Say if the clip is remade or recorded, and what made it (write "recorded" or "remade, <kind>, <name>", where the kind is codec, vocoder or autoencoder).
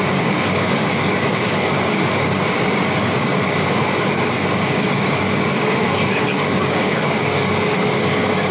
remade, codec, DAC